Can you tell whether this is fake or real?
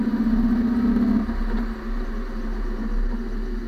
real